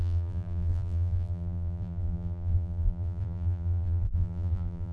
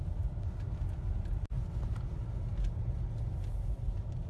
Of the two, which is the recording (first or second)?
second